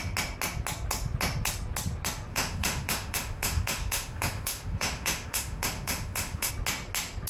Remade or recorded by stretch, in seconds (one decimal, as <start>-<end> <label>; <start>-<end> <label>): 0.0-2.3 recorded; 2.3-6.5 remade; 6.5-7.3 recorded